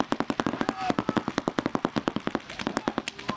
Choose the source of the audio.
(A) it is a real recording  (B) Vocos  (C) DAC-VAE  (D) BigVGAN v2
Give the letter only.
A